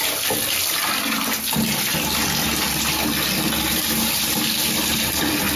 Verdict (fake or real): real